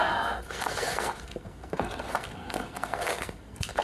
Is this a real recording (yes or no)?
no